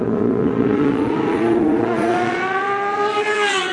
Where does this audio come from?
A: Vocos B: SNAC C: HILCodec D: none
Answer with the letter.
A